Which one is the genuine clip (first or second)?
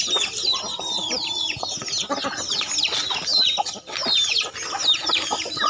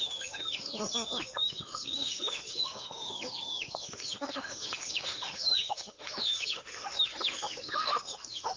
first